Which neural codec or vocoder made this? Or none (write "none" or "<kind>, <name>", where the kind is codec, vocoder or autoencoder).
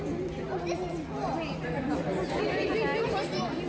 none